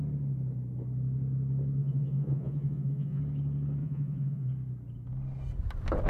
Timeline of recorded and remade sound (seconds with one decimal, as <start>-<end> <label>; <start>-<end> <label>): 0.0-1.8 recorded; 1.8-3.2 remade; 3.2-3.8 recorded; 3.8-4.5 remade; 4.5-6.1 recorded